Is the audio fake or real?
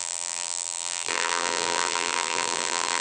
fake